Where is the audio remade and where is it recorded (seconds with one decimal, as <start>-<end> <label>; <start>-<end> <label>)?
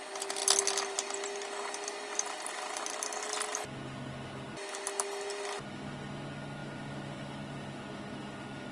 0.0-8.7 recorded